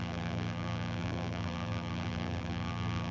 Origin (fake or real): fake